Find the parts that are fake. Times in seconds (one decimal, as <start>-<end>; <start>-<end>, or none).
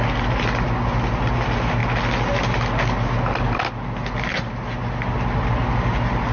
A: none